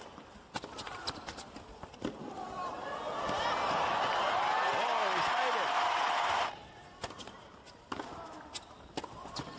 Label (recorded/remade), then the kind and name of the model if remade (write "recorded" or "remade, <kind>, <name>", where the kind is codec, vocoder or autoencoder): recorded